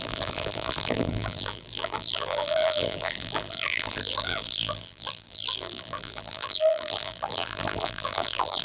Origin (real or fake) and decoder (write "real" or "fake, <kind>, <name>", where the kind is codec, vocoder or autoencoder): fake, vocoder, BigVGAN v2